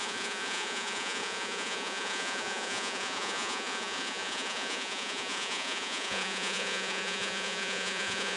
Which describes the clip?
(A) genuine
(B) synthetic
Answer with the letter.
B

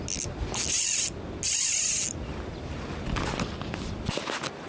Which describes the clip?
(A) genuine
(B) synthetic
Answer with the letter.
A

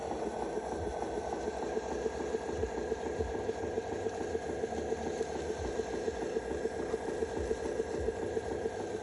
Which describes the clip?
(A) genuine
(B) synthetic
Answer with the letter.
A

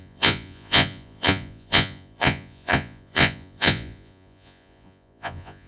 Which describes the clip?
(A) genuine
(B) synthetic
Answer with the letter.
B